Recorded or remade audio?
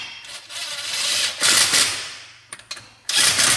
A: recorded